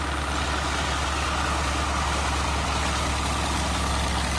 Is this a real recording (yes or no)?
yes